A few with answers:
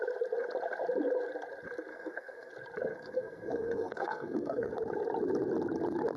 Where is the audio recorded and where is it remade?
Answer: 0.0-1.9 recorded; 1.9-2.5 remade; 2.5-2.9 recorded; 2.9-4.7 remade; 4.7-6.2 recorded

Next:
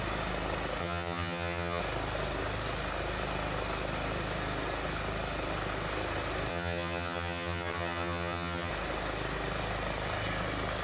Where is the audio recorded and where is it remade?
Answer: 0.0-0.8 recorded; 0.8-1.8 remade; 1.8-6.5 recorded; 6.5-8.7 remade; 8.7-10.8 recorded

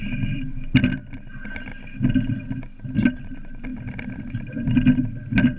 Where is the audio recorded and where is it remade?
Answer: 0.0-5.6 recorded

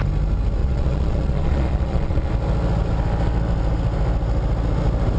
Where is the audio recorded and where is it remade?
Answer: 0.0-0.6 recorded; 0.6-2.3 remade; 2.3-5.2 recorded

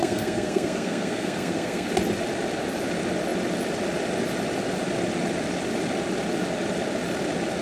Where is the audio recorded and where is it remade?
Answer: 0.0-1.9 remade; 1.9-7.6 recorded

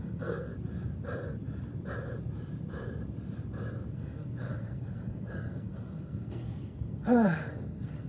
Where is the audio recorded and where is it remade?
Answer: 0.0-0.5 remade; 0.5-3.9 recorded; 3.9-8.1 remade

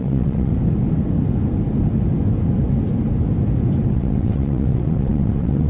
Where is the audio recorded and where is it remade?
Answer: 0.0-0.5 remade; 0.5-3.9 recorded; 3.9-5.7 remade